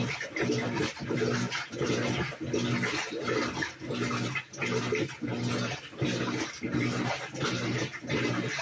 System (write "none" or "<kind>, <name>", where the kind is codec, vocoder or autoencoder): none